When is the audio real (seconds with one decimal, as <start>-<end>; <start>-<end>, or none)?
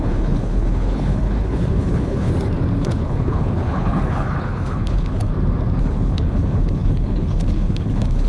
2.3-2.8; 5.3-5.8